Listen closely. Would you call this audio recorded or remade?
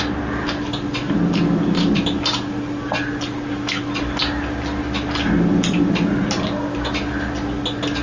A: recorded